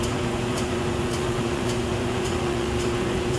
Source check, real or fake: fake